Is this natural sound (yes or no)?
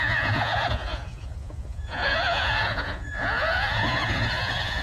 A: no